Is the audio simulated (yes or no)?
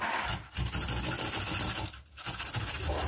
no